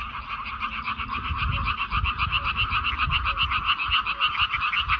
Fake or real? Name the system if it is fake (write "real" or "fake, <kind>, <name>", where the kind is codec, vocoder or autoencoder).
real